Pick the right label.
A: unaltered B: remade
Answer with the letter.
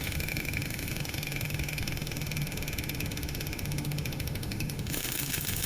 B